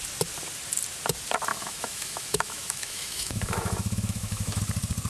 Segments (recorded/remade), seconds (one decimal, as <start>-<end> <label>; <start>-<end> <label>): 0.0-1.5 recorded; 1.5-4.6 remade; 4.6-5.1 recorded